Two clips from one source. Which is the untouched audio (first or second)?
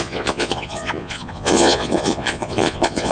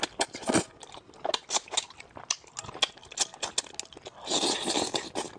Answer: second